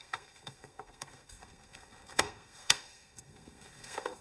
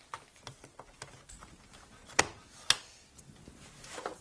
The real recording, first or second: second